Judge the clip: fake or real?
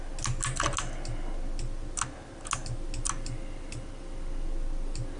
real